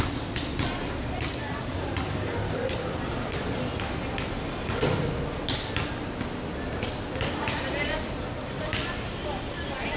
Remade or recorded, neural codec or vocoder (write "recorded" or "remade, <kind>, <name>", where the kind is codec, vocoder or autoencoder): recorded